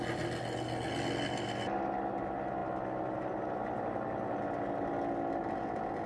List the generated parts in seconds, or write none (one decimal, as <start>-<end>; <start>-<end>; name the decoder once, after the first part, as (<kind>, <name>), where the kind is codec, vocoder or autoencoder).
none